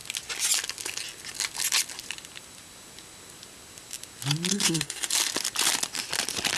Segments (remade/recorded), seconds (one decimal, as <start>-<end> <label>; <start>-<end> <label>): 0.0-4.5 recorded; 4.5-5.1 remade; 5.1-6.6 recorded